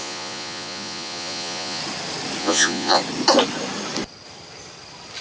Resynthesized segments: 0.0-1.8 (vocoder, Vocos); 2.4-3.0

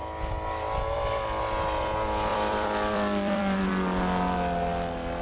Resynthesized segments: 2.3-3.7 (vocoder, BigVGAN v2)